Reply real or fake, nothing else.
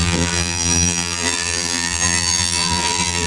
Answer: fake